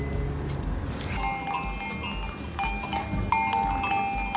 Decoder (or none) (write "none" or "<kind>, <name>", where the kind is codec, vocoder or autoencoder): none